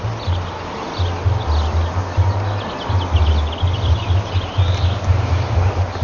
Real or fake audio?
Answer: real